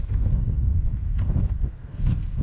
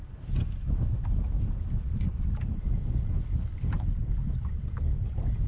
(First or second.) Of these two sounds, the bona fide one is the second